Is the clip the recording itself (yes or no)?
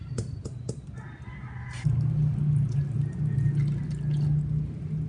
yes